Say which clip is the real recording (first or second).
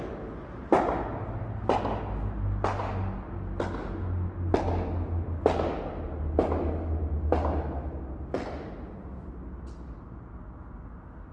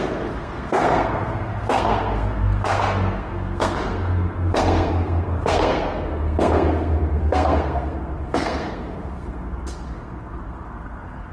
first